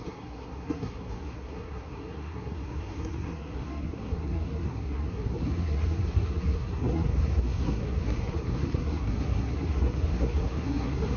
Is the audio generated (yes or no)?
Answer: yes